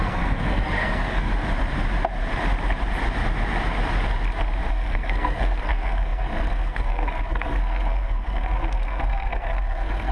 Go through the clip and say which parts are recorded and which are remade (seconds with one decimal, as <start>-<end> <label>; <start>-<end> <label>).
0.0-1.3 remade; 1.3-4.7 recorded; 4.7-10.1 remade